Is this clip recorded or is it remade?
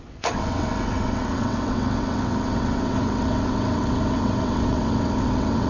remade